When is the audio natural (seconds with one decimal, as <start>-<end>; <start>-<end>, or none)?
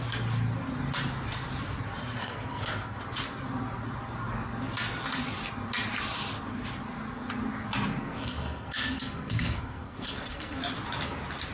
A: 0.0-2.2; 3.0-8.0; 10.6-11.5